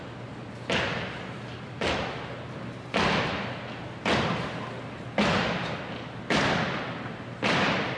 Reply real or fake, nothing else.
real